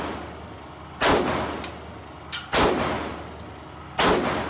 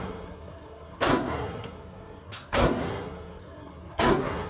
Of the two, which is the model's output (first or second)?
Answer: second